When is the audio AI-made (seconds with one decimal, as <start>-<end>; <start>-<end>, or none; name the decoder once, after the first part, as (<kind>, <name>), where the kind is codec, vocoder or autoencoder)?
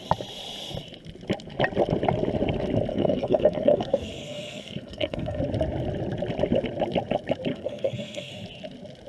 2.9-5.4 (codec, SNAC); 7.5-8.3